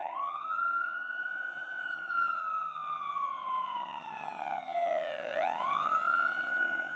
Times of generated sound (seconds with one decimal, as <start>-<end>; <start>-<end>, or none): 0.0-7.0